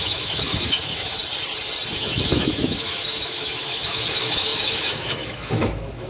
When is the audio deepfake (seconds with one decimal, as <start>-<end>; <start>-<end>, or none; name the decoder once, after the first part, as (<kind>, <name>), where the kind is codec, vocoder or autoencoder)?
0.0-1.2 (autoencoder, DAC-VAE); 1.9-6.1